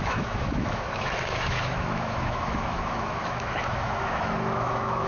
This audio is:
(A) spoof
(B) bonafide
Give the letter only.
A